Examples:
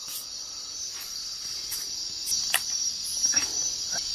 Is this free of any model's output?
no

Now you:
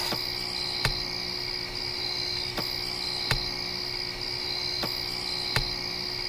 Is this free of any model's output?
yes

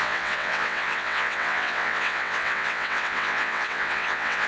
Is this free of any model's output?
no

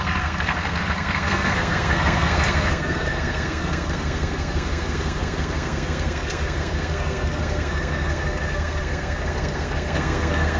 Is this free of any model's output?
no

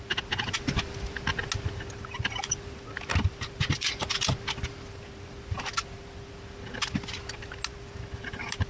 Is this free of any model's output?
yes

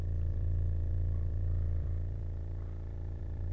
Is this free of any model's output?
no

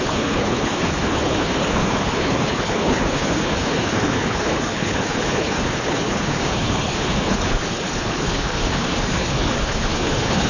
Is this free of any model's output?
no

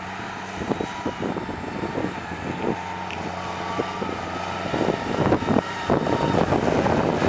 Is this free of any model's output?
yes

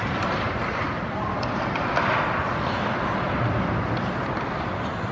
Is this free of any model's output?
yes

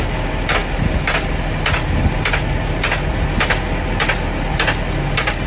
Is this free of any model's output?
yes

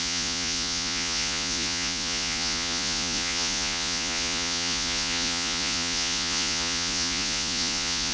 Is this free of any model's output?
no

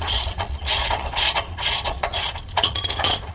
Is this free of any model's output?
no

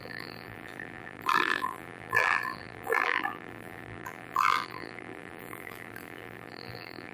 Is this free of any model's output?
no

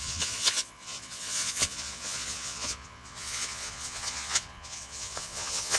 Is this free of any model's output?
no